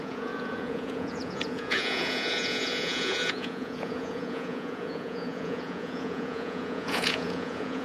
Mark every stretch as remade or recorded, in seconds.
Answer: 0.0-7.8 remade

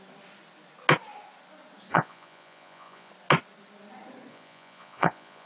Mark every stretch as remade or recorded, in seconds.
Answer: 0.0-1.9 recorded; 1.9-3.1 remade; 3.1-4.3 recorded; 4.3-5.5 remade

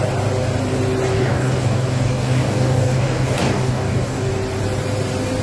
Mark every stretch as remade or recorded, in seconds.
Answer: 0.0-1.1 recorded; 1.1-4.3 remade; 4.3-5.4 recorded

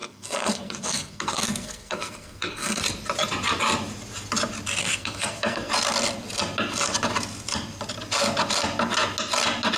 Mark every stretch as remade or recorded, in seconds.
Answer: 0.0-2.8 remade; 2.8-4.8 recorded; 4.8-5.7 remade; 5.7-9.8 recorded